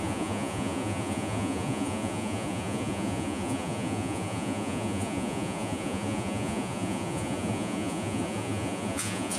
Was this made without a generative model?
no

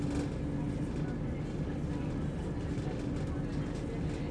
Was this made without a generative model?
yes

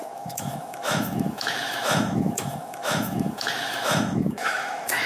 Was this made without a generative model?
no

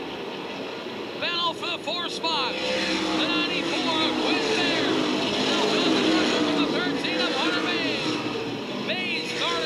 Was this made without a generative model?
yes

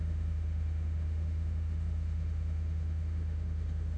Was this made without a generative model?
no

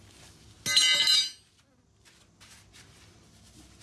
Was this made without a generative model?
yes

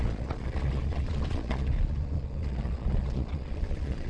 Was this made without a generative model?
no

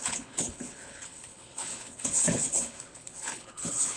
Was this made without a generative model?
no